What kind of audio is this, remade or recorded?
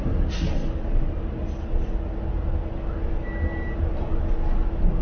recorded